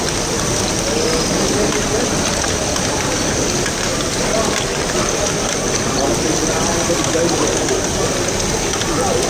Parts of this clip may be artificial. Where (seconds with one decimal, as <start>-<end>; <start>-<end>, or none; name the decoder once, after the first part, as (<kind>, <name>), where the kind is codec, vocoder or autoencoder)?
none